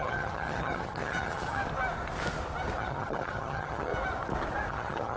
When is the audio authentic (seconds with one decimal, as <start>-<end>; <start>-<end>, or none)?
1.6-2.8; 3.9-4.7